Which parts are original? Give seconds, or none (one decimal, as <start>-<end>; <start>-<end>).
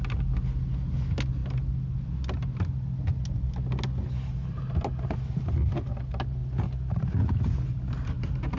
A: 0.0-8.6